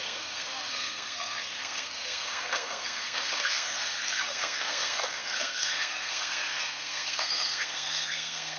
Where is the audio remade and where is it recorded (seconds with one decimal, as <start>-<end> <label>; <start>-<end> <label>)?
0.0-8.6 remade